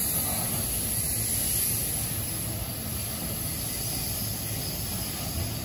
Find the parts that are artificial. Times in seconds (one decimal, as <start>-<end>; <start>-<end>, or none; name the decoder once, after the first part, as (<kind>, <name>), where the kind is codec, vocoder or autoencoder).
none